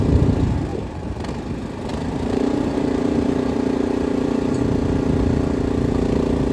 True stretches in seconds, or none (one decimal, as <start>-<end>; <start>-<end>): 0.0-0.7; 1.3-1.9; 4.6-6.5